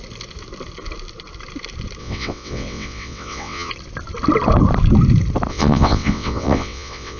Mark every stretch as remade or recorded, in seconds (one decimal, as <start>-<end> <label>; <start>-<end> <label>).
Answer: 0.0-2.0 recorded; 2.0-3.7 remade; 3.7-5.5 recorded; 5.5-7.2 remade